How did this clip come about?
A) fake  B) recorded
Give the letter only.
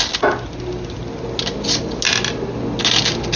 B